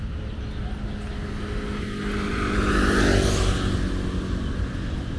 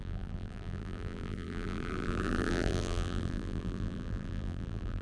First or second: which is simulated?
second